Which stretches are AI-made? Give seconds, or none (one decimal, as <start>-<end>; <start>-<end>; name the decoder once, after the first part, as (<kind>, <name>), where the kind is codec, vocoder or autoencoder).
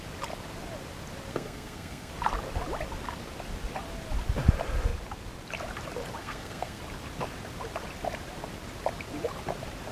1.3-2.1 (codec, SNAC); 6.2-6.8